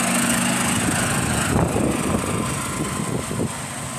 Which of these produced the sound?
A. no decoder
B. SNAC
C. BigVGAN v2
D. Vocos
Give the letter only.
A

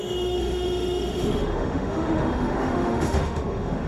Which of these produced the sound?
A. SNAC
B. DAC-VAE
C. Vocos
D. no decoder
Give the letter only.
B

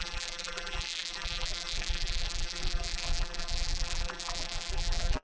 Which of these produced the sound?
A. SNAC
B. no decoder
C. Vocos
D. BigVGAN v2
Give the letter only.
D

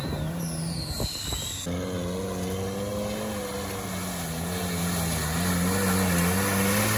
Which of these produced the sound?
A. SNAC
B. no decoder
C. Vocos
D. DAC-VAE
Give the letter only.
B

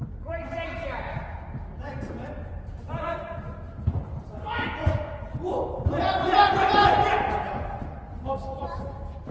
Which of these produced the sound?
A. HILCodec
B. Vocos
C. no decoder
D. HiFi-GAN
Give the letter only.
C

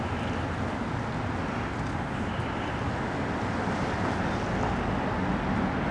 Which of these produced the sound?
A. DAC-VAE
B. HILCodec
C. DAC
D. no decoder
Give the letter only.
D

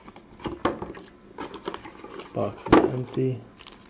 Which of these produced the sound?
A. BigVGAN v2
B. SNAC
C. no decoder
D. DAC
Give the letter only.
C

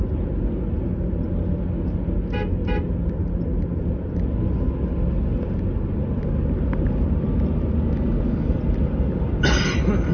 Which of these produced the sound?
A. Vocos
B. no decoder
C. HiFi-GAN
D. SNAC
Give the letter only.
B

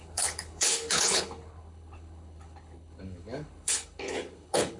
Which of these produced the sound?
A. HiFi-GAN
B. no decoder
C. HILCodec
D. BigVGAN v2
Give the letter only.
C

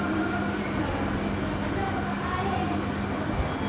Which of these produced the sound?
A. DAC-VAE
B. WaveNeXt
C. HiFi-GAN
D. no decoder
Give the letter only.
D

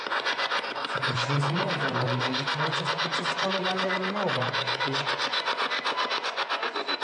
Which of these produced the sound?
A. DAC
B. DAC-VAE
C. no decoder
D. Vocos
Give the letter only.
D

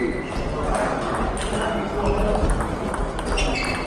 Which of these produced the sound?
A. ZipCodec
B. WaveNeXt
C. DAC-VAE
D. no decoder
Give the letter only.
D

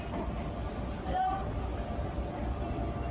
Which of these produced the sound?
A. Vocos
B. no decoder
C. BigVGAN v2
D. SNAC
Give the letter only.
B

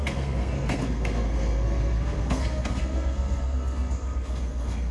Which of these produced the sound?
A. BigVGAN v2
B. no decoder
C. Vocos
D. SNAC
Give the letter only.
D